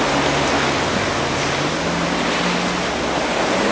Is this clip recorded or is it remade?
recorded